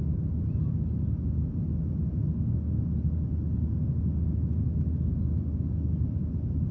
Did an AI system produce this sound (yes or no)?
no